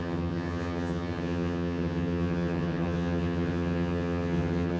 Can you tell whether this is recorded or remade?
remade